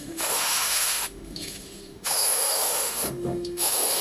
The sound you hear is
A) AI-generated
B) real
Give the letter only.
A